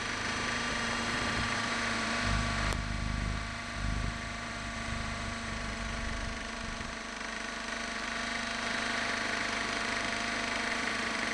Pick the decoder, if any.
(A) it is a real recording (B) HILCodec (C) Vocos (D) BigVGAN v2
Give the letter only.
D